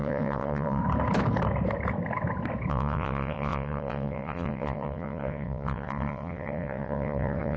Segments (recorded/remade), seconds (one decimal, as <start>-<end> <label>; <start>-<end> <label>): 0.0-0.8 remade; 0.8-2.7 recorded; 2.7-7.6 remade